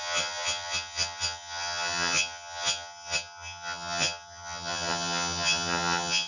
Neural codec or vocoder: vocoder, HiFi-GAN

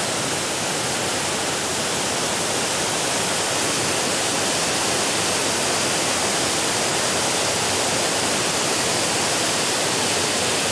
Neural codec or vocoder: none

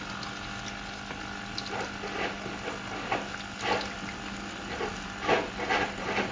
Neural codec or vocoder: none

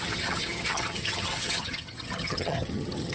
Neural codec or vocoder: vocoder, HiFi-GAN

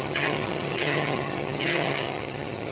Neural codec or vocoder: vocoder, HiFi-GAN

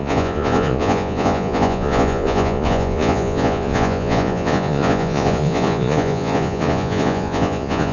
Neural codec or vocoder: vocoder, Vocos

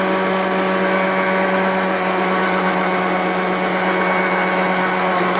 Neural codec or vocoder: none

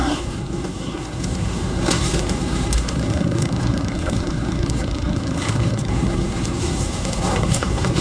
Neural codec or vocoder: codec, SNAC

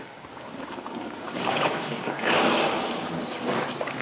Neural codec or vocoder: codec, DAC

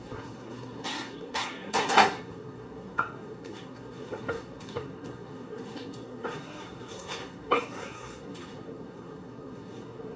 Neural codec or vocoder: codec, SNAC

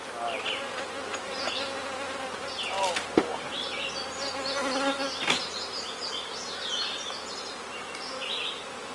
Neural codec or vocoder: none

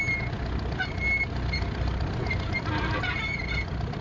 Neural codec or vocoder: none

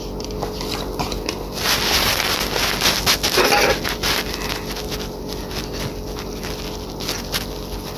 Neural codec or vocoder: none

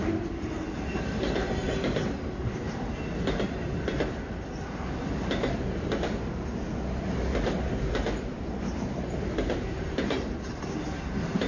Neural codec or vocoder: none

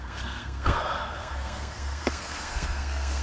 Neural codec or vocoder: codec, SNAC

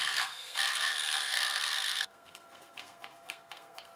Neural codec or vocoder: codec, SNAC